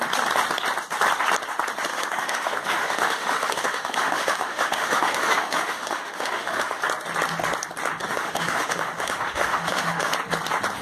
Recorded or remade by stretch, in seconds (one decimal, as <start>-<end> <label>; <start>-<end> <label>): 0.0-1.9 recorded; 1.9-6.8 remade; 6.8-8.0 recorded; 8.0-10.1 remade; 10.1-10.8 recorded